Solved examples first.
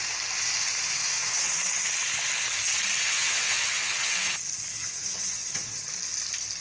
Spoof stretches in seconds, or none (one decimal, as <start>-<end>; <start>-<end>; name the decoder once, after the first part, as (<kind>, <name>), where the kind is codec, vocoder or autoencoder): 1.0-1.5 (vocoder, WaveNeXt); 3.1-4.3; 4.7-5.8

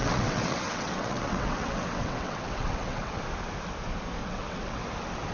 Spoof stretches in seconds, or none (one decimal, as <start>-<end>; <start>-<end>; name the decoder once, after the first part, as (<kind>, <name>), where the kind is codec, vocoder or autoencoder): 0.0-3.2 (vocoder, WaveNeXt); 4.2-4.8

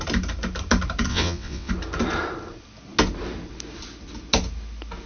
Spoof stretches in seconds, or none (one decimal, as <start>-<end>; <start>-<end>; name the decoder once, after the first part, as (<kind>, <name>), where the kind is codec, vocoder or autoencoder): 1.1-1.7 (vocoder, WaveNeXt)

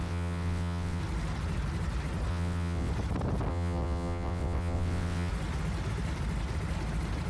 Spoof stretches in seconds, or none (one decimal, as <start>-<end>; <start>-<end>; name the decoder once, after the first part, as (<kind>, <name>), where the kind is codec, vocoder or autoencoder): 0.0-1.0 (vocoder, WaveNeXt); 2.3-2.9; 3.5-5.3